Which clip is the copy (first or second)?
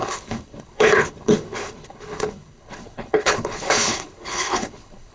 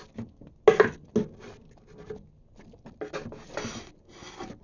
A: first